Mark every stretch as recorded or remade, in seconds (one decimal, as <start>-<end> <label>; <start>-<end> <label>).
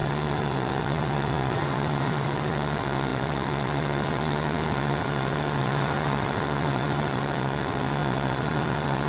0.0-9.1 remade